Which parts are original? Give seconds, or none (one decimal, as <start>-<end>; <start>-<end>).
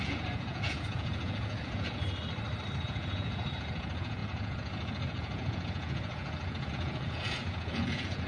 2.0-2.8